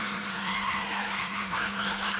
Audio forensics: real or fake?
fake